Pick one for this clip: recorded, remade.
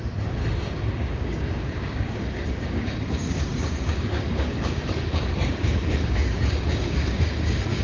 remade